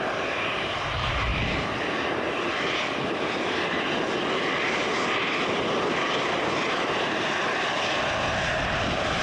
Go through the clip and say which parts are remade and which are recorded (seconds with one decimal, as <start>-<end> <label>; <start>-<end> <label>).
0.0-9.2 recorded